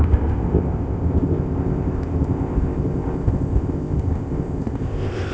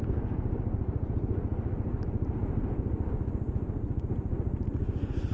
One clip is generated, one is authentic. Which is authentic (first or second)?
second